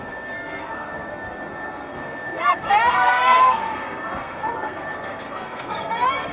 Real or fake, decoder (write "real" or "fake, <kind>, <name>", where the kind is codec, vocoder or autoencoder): fake, codec, SNAC